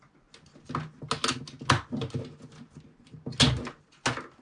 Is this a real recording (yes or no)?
yes